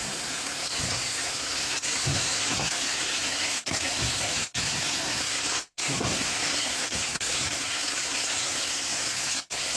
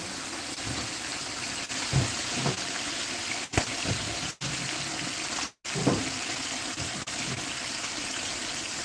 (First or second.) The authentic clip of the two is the second